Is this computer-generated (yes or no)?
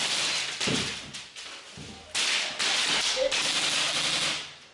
no